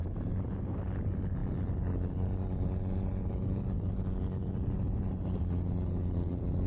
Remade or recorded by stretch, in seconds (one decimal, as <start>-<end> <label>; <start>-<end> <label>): 0.0-6.7 recorded